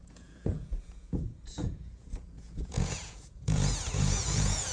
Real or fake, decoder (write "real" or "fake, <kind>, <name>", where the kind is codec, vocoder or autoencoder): fake, vocoder, Vocos